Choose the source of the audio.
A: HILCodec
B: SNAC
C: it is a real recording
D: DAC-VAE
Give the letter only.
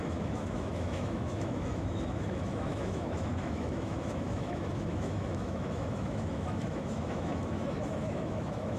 D